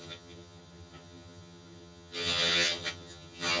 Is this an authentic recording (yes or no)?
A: no